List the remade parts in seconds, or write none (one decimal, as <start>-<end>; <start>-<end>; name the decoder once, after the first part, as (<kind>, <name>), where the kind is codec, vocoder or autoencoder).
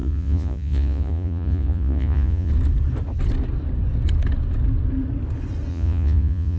0.0-2.5 (vocoder, Vocos); 5.7-6.6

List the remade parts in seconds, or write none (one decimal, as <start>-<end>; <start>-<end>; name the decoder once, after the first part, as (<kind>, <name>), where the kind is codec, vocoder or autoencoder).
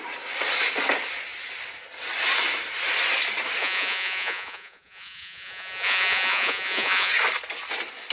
3.6-7.1 (vocoder, Vocos)